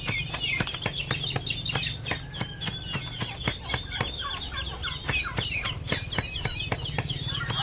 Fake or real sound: real